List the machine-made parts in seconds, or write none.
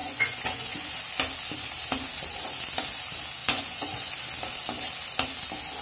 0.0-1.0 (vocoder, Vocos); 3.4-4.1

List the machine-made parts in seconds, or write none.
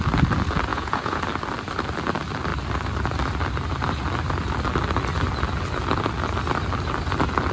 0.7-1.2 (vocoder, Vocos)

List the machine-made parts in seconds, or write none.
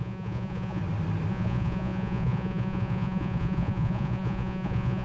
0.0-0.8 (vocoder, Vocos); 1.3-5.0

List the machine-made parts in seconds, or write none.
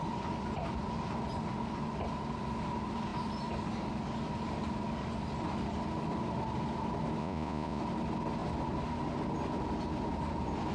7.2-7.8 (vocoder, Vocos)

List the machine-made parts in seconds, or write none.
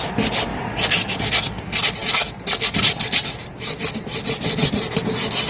0.5-1.2 (vocoder, BigVGAN v2)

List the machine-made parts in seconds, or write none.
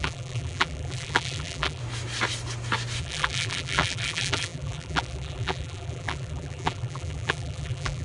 0.0-1.8 (vocoder, BigVGAN v2); 3.0-8.0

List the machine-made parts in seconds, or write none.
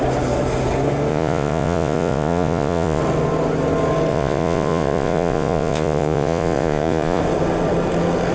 1.1-3.0 (vocoder, Vocos); 4.1-7.2